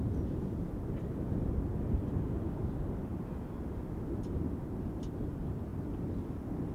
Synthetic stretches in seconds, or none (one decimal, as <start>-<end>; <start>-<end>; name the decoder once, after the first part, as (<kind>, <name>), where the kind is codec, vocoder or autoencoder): none